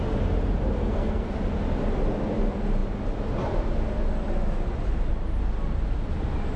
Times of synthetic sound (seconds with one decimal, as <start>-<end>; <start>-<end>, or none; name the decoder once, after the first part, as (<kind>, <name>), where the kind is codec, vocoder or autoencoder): 0.8-1.3 (codec, SNAC)